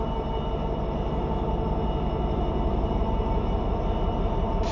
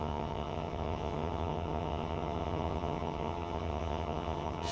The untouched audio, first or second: first